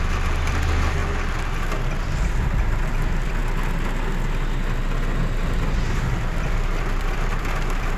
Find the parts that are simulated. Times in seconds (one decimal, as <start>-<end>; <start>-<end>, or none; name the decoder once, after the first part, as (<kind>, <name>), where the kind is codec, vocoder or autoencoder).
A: 0.0-1.0 (vocoder, BigVGAN v2); 2.0-3.4; 6.1-8.0